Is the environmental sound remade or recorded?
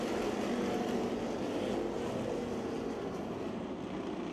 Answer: recorded